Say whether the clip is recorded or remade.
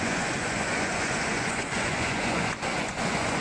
remade